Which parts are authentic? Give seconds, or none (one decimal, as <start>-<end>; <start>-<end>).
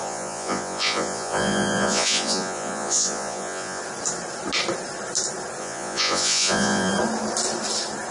3.8-5.6; 6.9-8.1